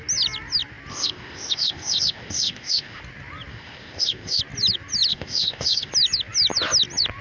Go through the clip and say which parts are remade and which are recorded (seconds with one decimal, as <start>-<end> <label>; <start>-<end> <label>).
0.0-0.9 recorded; 0.9-3.0 remade; 3.0-3.5 recorded; 3.5-4.4 remade; 4.4-5.1 recorded; 5.1-5.9 remade; 5.9-7.2 recorded